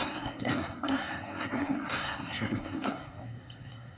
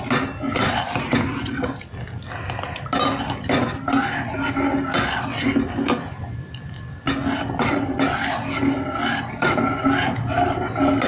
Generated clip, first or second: first